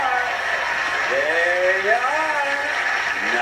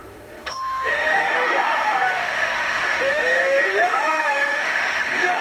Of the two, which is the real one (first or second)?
first